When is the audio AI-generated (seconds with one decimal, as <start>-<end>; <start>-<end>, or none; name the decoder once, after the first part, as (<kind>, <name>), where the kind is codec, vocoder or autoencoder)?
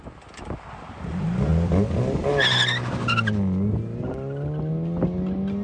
none